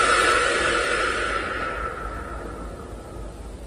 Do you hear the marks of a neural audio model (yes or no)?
no